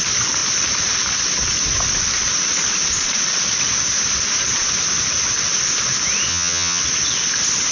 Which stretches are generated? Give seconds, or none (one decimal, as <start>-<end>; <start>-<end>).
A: 6.3-6.8